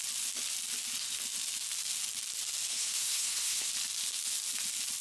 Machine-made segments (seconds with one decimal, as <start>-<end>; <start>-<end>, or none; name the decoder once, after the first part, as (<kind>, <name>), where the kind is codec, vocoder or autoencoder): 2.7-3.7 (codec, SNAC)